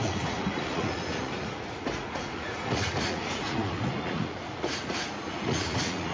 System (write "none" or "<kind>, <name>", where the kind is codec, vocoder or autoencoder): vocoder, Vocos